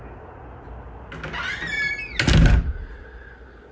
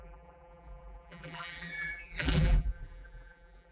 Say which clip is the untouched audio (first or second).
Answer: first